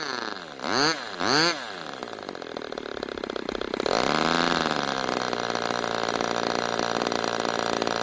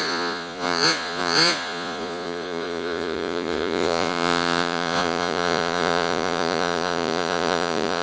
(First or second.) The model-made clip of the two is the second